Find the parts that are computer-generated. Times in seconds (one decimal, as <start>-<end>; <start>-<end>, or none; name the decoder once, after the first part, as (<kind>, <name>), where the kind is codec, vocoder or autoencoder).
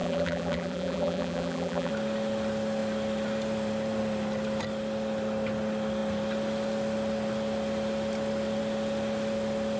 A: 0.0-1.9 (vocoder, BigVGAN v2)